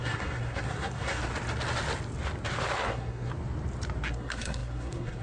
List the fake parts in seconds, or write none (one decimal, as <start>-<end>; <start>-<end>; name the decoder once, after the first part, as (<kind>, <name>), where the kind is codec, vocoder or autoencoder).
0.0-1.2 (codec, SNAC); 2.8-3.3; 4.1-5.2

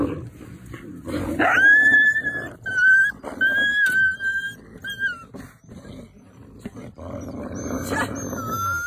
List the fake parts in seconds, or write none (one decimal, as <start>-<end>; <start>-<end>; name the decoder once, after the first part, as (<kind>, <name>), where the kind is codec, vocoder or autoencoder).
none

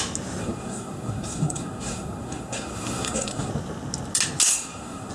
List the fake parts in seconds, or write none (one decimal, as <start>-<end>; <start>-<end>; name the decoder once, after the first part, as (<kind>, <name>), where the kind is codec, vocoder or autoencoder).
0.4-3.5 (codec, SNAC); 4.5-5.1

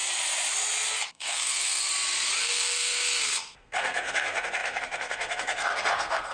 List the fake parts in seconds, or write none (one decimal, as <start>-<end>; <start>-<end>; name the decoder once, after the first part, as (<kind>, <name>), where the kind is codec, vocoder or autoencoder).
1.1-1.9 (codec, SNAC); 2.4-6.3

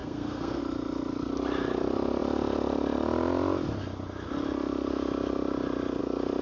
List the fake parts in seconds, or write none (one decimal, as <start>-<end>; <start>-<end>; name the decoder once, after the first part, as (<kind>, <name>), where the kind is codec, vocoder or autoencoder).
0.0-0.6 (codec, SNAC)